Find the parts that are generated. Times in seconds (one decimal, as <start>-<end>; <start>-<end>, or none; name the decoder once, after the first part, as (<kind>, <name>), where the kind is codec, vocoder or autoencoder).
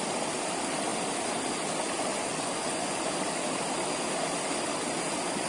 2.1-3.0 (vocoder, Vocos)